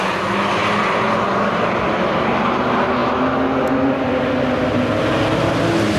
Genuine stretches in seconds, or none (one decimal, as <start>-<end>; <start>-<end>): 0.0-6.0